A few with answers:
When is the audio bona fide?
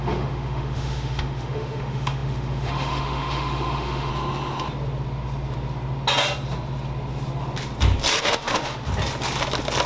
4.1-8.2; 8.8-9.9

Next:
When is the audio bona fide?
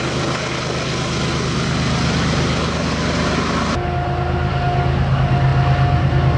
0.0-6.4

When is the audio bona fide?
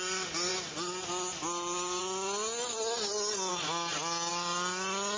0.0-5.2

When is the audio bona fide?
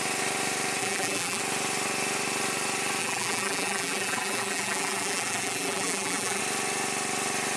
0.0-0.8; 1.4-3.0; 6.4-7.6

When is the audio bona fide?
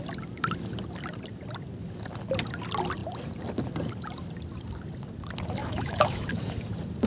0.0-5.6; 6.3-7.1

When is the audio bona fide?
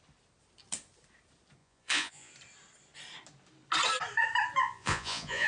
0.0-1.6; 2.3-4.6